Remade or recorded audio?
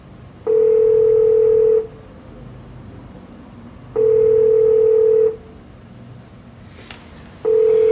recorded